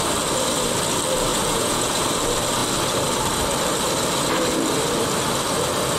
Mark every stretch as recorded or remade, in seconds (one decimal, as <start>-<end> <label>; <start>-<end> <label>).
0.0-1.3 recorded; 1.3-2.0 remade; 2.0-6.0 recorded